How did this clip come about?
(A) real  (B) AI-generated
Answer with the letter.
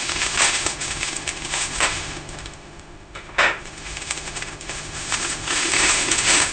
B